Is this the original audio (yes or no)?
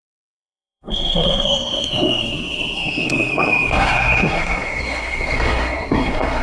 no